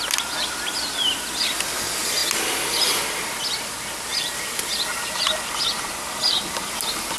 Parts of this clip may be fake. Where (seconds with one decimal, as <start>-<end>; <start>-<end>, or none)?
4.1-4.7